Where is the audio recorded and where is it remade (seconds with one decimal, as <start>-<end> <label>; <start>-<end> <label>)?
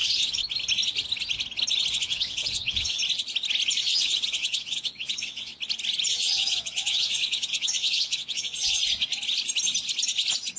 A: 0.0-0.4 remade; 0.4-1.9 recorded; 1.9-3.0 remade; 3.0-3.8 recorded; 3.8-5.5 remade; 5.5-6.1 recorded; 6.1-8.8 remade; 8.8-10.6 recorded